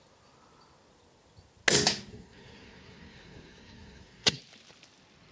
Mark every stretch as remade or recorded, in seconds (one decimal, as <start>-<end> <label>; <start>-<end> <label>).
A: 0.0-2.1 recorded; 2.1-4.4 remade; 4.4-5.3 recorded